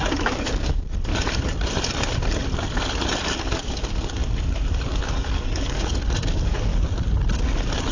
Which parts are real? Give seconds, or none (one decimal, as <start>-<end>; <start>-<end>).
1.1-3.4; 4.2-4.9; 6.7-7.9